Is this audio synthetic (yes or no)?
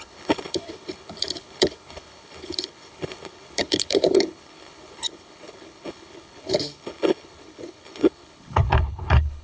yes